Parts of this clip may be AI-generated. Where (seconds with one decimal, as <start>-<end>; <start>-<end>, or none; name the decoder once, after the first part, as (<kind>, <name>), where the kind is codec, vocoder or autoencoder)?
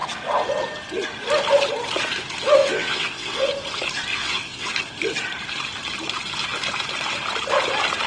2.6-3.5 (vocoder, WaveNeXt); 4.1-4.7